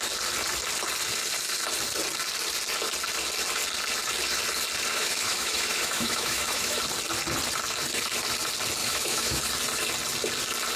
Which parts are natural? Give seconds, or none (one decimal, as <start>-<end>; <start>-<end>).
0.0-4.9; 6.8-8.8; 9.4-10.8